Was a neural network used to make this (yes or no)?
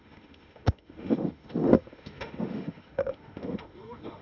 yes